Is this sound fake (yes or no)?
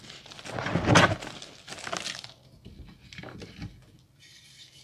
no